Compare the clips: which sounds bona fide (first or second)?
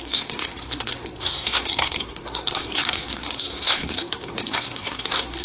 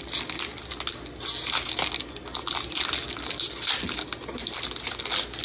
second